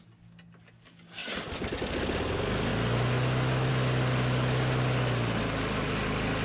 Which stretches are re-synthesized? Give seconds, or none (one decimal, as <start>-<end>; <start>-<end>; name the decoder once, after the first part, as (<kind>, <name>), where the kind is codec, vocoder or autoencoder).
none